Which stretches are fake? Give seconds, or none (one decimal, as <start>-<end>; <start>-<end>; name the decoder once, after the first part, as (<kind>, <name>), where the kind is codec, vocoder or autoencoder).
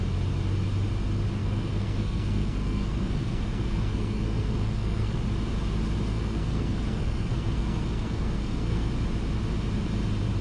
1.4-5.2 (codec, SNAC); 6.1-8.9